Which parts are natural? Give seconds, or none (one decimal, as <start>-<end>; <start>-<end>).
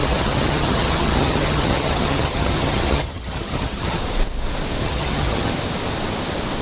4.0-4.8; 5.5-6.6